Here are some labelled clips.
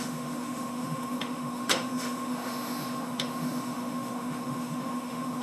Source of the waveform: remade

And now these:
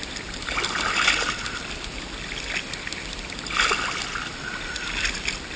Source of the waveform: recorded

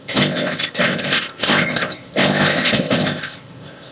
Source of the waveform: remade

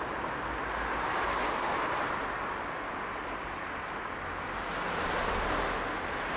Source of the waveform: recorded